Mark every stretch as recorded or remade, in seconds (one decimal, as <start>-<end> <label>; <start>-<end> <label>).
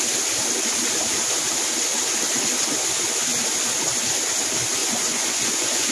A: 0.0-4.8 recorded; 4.8-5.9 remade